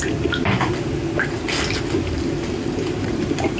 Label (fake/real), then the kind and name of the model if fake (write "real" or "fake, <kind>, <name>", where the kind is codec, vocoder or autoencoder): real